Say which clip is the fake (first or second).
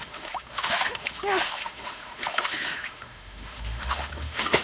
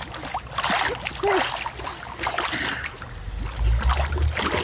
first